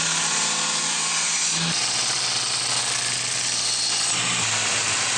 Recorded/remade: recorded